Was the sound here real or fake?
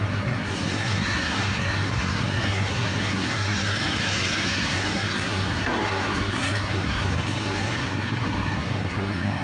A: fake